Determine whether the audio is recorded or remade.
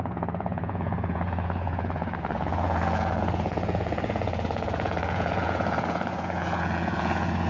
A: remade